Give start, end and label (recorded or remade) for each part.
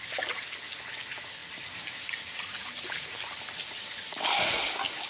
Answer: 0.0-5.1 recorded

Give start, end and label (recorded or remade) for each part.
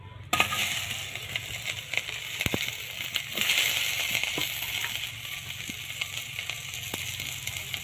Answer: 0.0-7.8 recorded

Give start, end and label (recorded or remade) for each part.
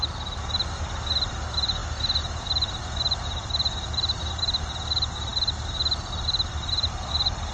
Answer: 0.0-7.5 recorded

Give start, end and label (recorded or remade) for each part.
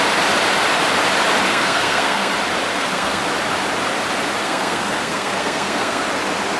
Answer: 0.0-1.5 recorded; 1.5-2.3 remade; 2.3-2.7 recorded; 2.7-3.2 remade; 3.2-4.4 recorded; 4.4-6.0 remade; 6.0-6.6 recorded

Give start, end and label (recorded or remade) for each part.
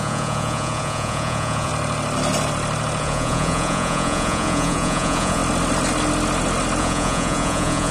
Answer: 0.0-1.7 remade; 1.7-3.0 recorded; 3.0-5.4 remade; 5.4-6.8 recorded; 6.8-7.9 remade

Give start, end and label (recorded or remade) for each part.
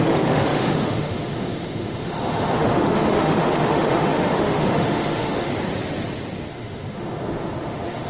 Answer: 0.0-5.5 remade; 5.5-6.5 recorded; 6.5-8.1 remade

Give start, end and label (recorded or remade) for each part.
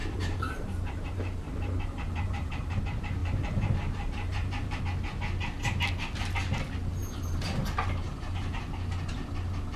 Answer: 0.0-2.8 remade; 2.8-3.2 recorded; 3.2-4.8 remade; 4.8-7.0 recorded; 7.0-7.6 remade; 7.6-8.0 recorded; 8.0-8.6 remade; 8.6-9.8 recorded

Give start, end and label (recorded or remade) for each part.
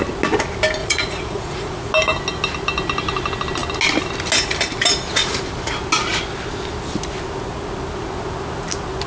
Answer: 0.0-0.8 recorded; 0.8-1.9 remade; 1.9-9.1 recorded